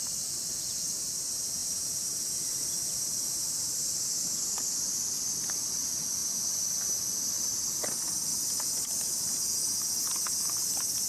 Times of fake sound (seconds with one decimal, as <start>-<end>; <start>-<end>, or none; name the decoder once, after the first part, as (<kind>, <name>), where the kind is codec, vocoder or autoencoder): 1.6-4.3 (vocoder, BigVGAN v2); 8.3-9.1